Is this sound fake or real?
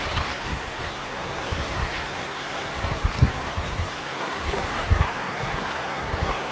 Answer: fake